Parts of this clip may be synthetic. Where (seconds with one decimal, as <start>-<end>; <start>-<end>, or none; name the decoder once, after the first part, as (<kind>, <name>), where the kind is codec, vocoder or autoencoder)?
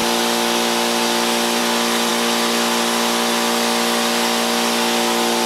none